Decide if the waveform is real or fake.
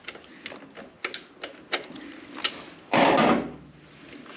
real